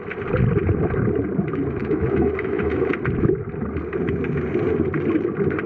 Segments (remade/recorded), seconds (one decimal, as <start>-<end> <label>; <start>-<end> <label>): 0.0-1.8 recorded; 1.8-2.9 remade; 2.9-5.7 recorded